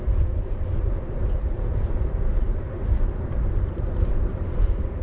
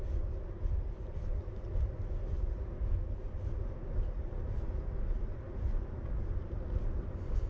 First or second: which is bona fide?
second